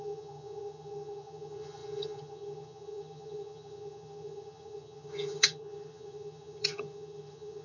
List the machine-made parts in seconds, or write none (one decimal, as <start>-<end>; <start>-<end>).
0.0-7.6

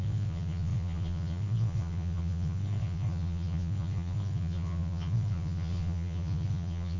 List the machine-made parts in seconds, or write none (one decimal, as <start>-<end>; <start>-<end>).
0.0-7.0

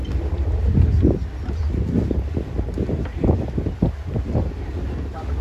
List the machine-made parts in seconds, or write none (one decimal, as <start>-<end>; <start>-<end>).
none

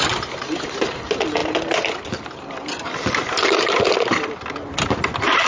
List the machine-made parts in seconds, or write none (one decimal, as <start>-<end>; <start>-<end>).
none

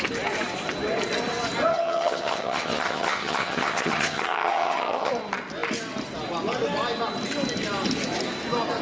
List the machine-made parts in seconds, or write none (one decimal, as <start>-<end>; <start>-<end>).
1.7-5.1